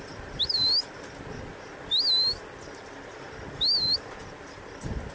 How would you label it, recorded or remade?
recorded